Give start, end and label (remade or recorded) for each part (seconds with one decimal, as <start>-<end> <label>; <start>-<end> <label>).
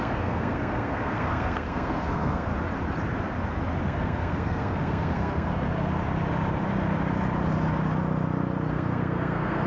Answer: 0.0-2.5 remade; 2.5-3.8 recorded; 3.8-6.0 remade; 6.0-8.7 recorded; 8.7-9.7 remade